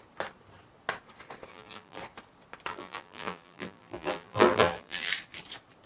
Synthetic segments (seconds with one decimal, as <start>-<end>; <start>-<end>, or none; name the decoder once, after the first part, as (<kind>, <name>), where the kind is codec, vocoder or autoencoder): 1.5-2.0 (vocoder, BigVGAN v2); 2.7-5.1